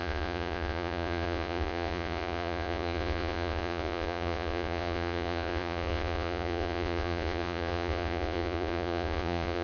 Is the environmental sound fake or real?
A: fake